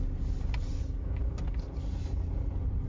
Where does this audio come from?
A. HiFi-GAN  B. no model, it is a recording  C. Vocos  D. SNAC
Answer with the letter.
B